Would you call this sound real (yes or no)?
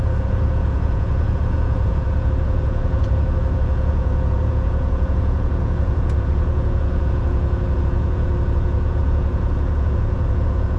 no